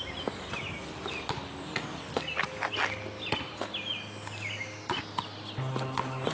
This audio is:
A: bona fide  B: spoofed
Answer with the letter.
A